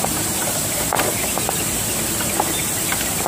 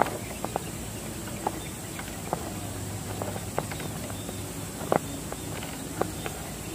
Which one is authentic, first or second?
second